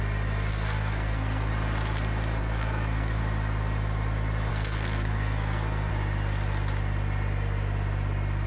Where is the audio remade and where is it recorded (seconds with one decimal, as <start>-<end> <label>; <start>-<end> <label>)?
0.0-0.5 recorded; 0.5-1.5 remade; 1.5-2.4 recorded; 2.4-3.2 remade; 3.2-4.5 recorded; 4.5-5.9 remade; 5.9-8.5 recorded